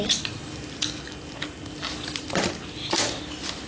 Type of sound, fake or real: real